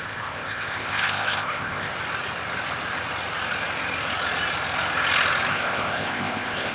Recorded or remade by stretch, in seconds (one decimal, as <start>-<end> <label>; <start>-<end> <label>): 0.0-1.9 remade; 1.9-5.5 recorded; 5.5-6.7 remade

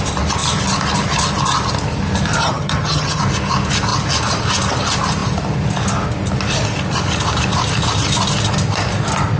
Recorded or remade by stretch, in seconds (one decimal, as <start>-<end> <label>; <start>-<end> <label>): 0.0-2.4 recorded; 2.4-3.2 remade; 3.2-9.4 recorded

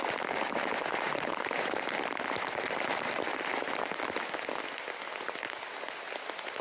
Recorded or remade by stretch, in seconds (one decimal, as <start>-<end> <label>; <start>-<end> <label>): 0.0-6.6 recorded

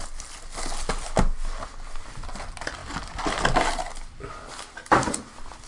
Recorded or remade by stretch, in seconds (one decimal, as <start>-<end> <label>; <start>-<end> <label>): 0.0-5.7 recorded

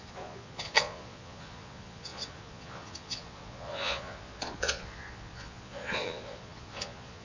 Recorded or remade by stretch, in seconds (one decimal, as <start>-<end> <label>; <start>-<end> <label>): 0.0-7.2 remade

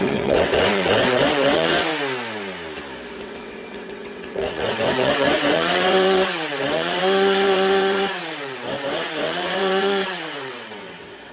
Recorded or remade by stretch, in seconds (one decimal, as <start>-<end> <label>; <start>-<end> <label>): 0.0-1.9 remade; 1.9-3.2 recorded; 3.2-11.3 remade